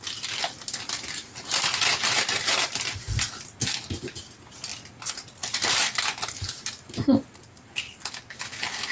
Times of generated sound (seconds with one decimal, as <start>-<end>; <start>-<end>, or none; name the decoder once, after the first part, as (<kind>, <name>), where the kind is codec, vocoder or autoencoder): none